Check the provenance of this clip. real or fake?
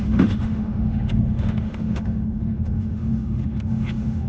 fake